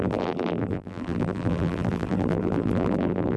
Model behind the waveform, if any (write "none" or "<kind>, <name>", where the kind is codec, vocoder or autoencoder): vocoder, BigVGAN v2